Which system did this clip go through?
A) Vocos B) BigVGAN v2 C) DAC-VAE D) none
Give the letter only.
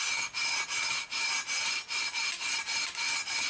D